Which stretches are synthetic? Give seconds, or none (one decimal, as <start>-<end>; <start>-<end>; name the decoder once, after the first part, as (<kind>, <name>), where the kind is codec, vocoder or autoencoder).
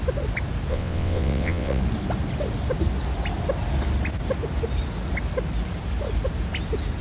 0.7-1.8 (vocoder, WaveNeXt)